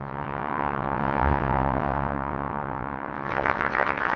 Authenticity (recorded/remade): remade